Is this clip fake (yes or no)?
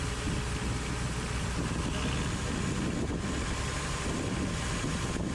no